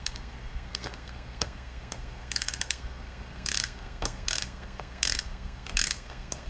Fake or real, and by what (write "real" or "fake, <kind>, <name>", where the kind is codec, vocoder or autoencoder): fake, codec, SNAC